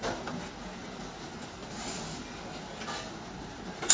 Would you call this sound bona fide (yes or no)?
yes